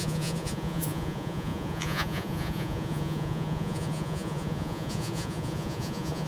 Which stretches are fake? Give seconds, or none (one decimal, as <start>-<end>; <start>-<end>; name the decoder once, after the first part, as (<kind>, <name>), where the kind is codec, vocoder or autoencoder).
0.0-6.3 (vocoder, Vocos)